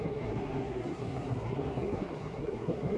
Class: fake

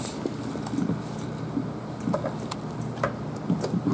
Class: real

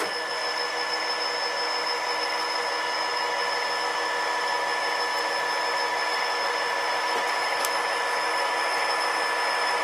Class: real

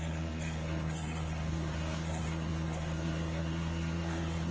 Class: fake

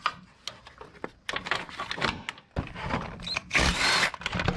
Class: real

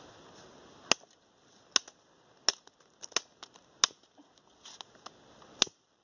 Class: real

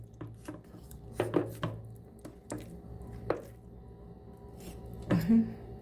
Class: real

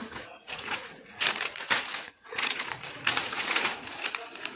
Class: fake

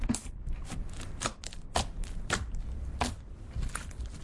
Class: real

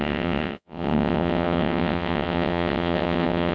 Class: fake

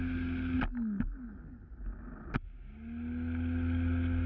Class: real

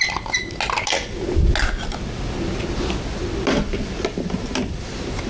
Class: real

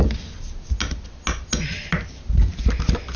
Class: real